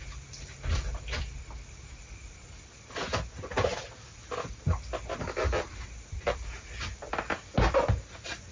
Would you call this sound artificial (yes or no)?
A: no